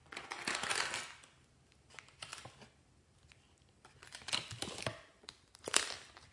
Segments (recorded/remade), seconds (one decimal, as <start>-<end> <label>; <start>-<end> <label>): 0.0-6.3 recorded